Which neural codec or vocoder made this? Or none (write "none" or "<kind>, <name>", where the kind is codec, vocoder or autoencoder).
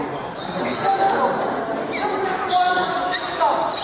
none